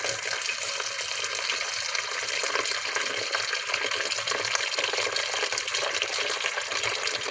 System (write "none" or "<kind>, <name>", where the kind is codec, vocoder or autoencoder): none